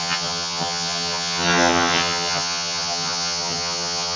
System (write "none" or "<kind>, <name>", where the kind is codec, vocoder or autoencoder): vocoder, HiFi-GAN